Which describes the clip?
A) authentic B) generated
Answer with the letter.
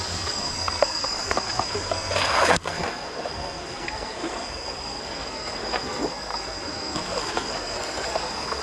B